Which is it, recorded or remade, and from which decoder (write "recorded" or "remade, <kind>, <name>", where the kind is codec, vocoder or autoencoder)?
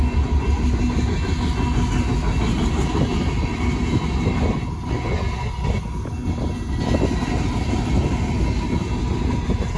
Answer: recorded